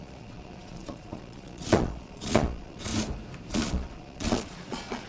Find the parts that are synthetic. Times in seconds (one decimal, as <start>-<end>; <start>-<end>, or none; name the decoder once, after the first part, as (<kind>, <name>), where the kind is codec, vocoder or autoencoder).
0.0-2.9 (vocoder, Vocos); 3.5-5.1